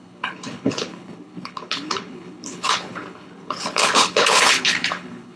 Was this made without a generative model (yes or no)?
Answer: no